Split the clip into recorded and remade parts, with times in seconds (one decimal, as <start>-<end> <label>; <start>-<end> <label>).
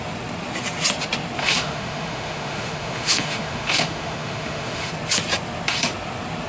0.0-1.4 recorded; 1.4-4.9 remade; 4.9-6.5 recorded